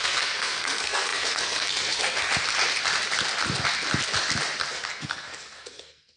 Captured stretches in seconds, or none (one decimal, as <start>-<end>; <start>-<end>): 2.3-4.7